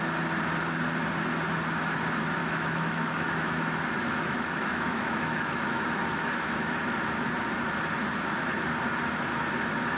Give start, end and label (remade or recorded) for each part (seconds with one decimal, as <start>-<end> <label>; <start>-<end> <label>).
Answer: 0.0-2.4 recorded; 2.4-7.0 remade; 7.0-10.0 recorded